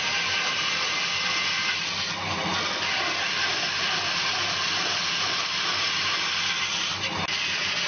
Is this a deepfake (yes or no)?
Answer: no